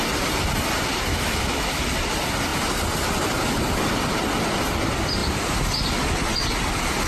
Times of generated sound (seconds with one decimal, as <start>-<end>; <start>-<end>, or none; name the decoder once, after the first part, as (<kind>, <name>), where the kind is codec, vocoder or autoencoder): 1.1-1.8 (autoencoder, DAC-VAE)

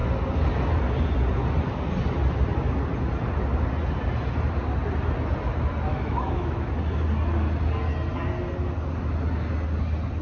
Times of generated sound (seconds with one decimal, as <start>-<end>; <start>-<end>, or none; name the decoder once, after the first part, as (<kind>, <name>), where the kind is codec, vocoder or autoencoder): 5.9-6.7 (autoencoder, DAC-VAE)